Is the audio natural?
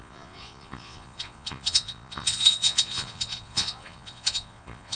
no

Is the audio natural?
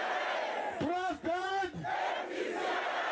no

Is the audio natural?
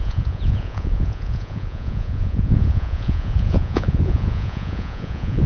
no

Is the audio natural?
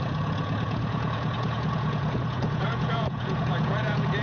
no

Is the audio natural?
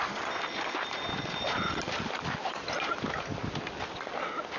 yes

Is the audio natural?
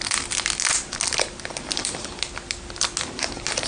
yes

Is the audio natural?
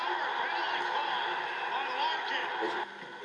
yes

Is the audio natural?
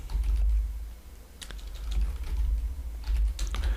yes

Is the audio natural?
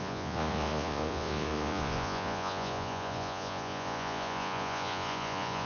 no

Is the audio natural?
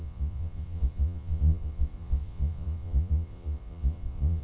no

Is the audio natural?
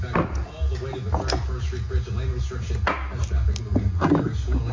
yes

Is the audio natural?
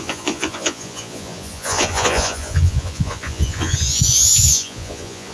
no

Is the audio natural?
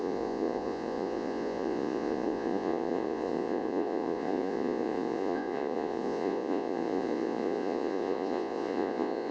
no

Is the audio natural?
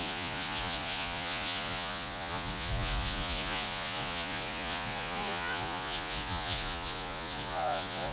no